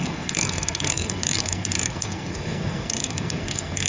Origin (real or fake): fake